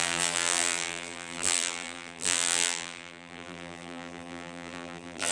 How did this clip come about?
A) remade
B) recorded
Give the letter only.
A